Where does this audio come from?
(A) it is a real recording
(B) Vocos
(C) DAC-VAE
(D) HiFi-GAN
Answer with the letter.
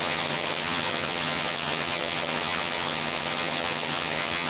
D